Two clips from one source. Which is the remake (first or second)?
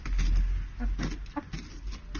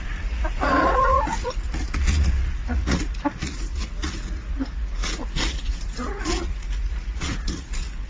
second